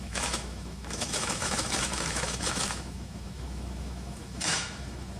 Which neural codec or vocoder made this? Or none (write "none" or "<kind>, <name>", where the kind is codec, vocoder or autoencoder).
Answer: autoencoder, DAC-VAE